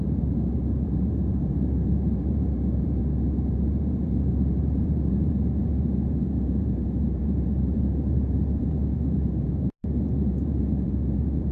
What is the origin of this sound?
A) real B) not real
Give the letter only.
B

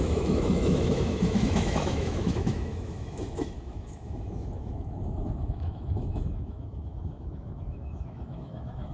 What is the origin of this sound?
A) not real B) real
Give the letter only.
A